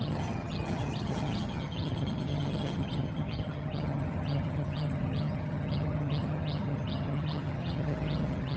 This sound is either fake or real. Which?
fake